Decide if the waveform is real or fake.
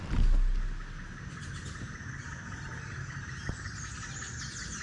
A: real